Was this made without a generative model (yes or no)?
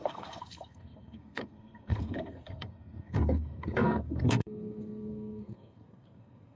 no